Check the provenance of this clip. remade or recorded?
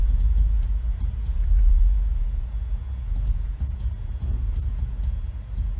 remade